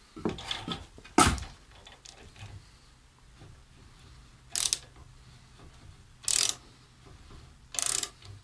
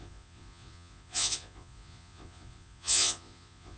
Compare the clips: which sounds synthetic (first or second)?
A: second